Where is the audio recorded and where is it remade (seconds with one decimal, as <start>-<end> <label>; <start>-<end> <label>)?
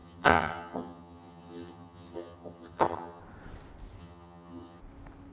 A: 0.0-3.2 remade; 3.2-4.0 recorded; 4.0-4.8 remade; 4.8-5.3 recorded